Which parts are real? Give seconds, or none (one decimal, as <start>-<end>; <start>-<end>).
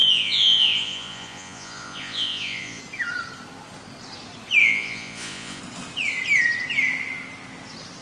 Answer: 2.8-4.6; 5.6-8.0